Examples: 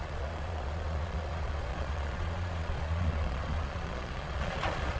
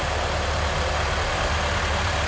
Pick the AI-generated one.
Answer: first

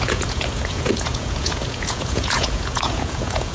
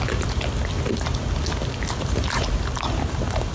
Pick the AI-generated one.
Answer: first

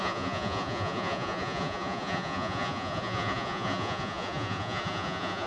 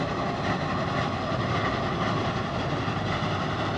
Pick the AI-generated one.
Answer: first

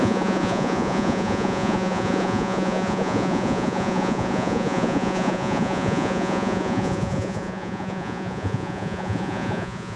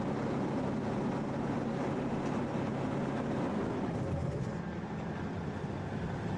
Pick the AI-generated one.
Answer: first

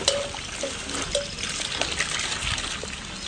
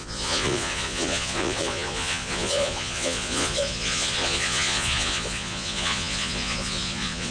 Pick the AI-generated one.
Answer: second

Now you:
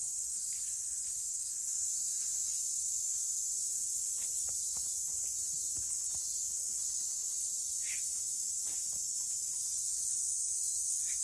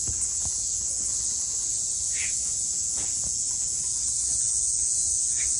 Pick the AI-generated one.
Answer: second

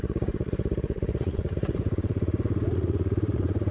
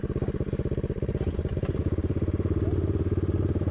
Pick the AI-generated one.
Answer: first